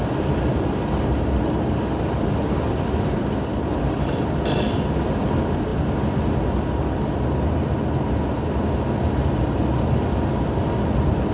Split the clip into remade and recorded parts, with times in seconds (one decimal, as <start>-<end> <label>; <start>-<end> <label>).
0.0-11.3 recorded